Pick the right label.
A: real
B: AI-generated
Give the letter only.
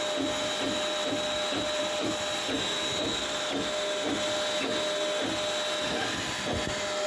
A